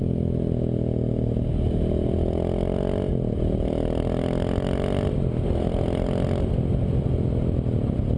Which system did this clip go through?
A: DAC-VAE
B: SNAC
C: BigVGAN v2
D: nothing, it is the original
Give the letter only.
D